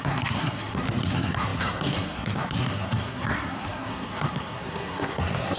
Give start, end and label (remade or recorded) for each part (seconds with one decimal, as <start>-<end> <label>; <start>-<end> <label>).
0.0-5.6 remade